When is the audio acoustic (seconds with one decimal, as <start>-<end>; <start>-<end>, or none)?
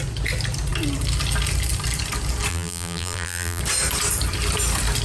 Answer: 0.0-2.5; 3.6-5.0